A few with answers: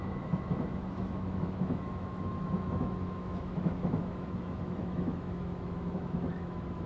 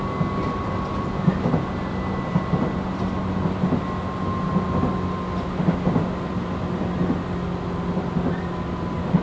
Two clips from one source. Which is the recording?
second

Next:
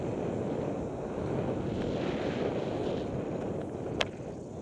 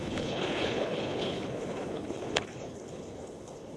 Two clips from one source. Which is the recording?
first